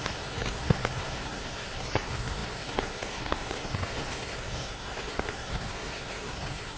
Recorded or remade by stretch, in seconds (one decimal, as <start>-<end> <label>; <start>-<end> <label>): 0.0-6.8 remade